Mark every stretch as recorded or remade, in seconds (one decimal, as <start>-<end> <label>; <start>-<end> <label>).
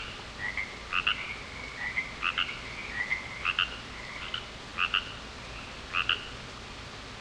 0.0-2.8 recorded; 2.8-3.5 remade; 3.5-7.2 recorded